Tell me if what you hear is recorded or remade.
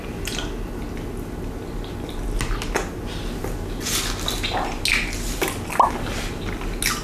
recorded